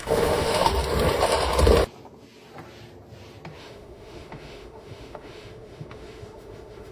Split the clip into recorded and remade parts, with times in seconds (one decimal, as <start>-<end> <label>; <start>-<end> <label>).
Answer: 0.0-0.7 remade; 0.7-3.6 recorded; 3.6-6.9 remade